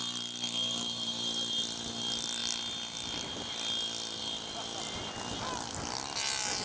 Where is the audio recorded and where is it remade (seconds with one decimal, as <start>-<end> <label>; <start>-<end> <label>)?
0.0-6.6 recorded